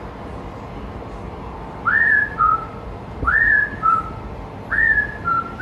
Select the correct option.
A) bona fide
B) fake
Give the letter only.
A